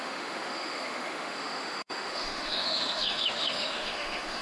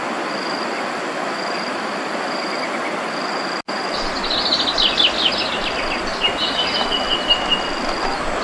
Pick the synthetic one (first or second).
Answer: first